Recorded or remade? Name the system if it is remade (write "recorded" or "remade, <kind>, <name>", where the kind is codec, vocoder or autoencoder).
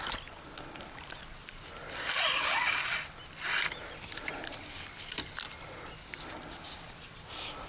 recorded